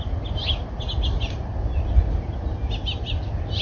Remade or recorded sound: recorded